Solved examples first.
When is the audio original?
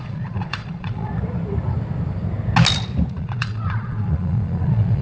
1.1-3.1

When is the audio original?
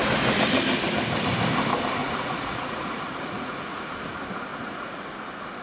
0.0-2.0; 3.9-4.5; 5.1-5.6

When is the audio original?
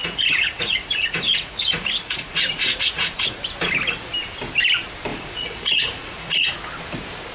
3.4-5.1; 6.5-7.3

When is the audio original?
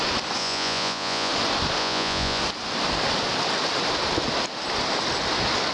0.0-0.4; 1.3-1.8; 2.4-5.7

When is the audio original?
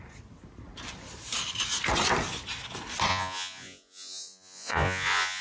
0.0-3.1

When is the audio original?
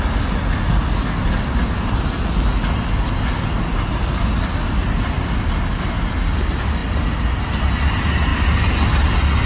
0.0-9.4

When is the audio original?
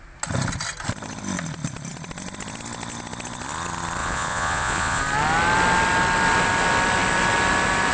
0.0-4.0; 5.0-7.9